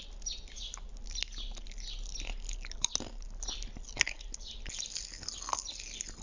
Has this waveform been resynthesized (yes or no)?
no